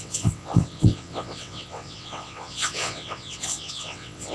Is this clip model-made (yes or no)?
yes